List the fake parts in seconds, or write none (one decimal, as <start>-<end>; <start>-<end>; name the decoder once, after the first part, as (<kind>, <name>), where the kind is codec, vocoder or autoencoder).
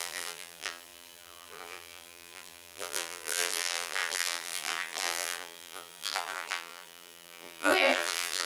0.0-8.5 (vocoder, BigVGAN v2)